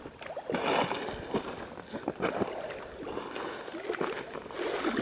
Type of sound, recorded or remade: recorded